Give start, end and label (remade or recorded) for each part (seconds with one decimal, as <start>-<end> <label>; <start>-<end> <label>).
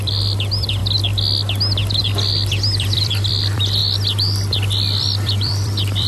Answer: 0.0-0.8 remade; 0.8-2.0 recorded; 2.0-3.8 remade; 3.8-4.5 recorded; 4.5-6.1 remade